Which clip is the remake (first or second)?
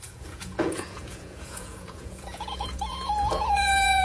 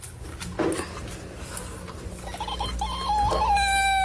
first